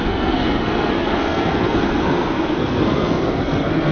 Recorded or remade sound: remade